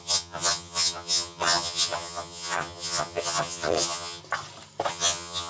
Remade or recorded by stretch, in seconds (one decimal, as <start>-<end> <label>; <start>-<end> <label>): 0.0-4.2 remade; 4.2-4.9 recorded; 4.9-5.5 remade